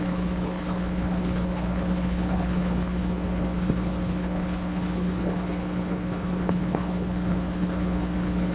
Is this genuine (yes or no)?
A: no